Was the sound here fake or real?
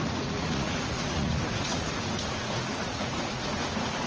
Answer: fake